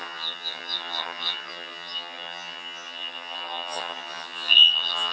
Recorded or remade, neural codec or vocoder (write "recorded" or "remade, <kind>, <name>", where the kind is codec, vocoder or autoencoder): remade, vocoder, HiFi-GAN